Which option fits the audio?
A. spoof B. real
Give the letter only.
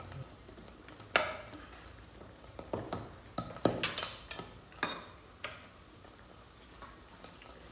B